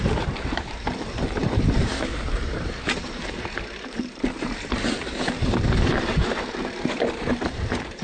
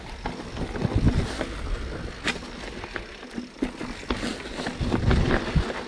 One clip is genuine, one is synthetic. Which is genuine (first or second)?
second